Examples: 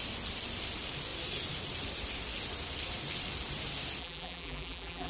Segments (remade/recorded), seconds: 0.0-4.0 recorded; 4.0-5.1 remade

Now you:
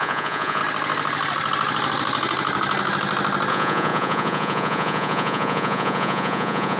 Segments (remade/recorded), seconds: 0.0-0.6 remade; 0.6-3.5 recorded; 3.5-6.8 remade

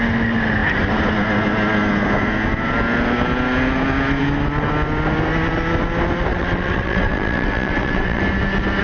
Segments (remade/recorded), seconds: 0.0-6.3 recorded; 6.3-8.2 remade; 8.2-8.8 recorded

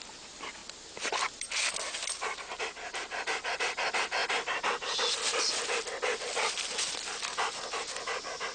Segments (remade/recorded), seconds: 0.0-8.5 recorded

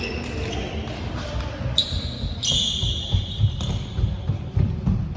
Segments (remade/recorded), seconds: 0.0-5.2 recorded

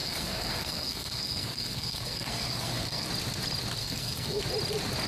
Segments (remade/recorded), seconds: 0.0-3.1 remade; 3.1-3.8 recorded; 3.8-4.4 remade; 4.4-5.1 recorded